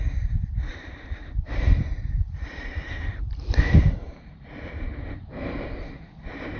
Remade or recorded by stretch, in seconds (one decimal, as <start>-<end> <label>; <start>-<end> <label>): 0.0-0.7 recorded; 0.7-4.7 remade; 4.7-6.6 recorded